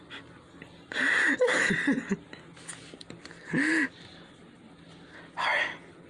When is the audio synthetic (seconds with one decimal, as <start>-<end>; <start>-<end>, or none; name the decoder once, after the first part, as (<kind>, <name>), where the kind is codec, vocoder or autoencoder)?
1.2-1.7 (autoencoder, DAC-VAE)